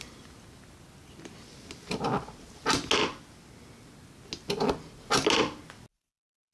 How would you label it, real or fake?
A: real